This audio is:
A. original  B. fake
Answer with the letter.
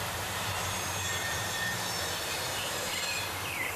B